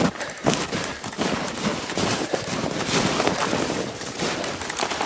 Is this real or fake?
real